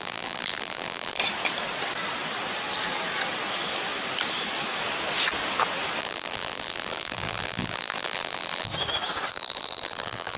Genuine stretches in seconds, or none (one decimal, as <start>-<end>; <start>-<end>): 1.2-6.0; 8.7-9.3